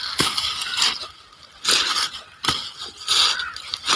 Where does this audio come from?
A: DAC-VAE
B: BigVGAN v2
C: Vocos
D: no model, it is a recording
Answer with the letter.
D